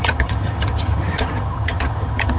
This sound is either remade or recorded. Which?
remade